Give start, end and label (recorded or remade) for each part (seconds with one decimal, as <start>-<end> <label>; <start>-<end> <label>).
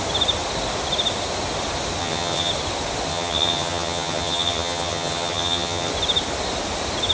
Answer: 0.0-2.0 recorded; 2.0-2.5 remade; 2.5-3.1 recorded; 3.1-5.9 remade; 5.9-7.1 recorded